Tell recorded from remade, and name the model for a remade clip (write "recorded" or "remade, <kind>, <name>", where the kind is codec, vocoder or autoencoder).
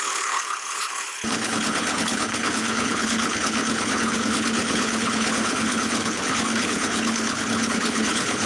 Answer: remade, codec, HILCodec